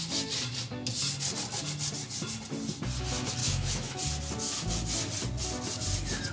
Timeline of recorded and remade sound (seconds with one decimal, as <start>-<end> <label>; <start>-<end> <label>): 0.0-3.4 recorded; 3.4-4.0 remade; 4.0-6.3 recorded

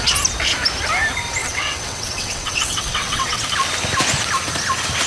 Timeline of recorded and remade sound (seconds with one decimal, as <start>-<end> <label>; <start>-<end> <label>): 0.0-1.4 recorded; 1.4-3.4 remade; 3.4-5.1 recorded